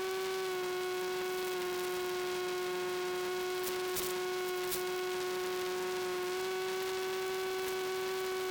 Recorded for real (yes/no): yes